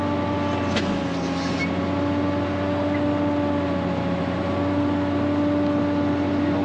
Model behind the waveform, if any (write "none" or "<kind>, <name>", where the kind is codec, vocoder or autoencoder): none